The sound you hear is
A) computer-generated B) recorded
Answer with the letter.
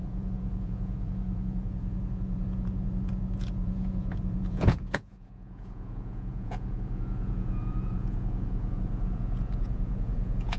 A